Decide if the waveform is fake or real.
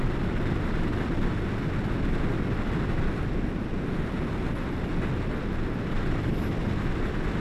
real